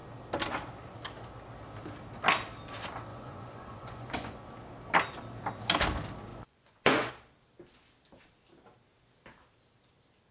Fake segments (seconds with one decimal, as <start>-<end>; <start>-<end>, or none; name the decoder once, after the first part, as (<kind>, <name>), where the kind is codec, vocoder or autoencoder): 3.1-4.4 (vocoder, Vocos); 6.3-7.1